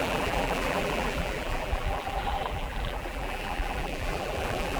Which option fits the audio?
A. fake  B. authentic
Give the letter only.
A